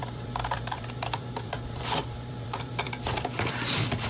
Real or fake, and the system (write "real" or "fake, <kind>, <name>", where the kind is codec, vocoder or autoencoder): fake, vocoder, BigVGAN v2